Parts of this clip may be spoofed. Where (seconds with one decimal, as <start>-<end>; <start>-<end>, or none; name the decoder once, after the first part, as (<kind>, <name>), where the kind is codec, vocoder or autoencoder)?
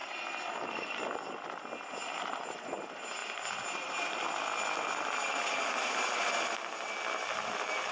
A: none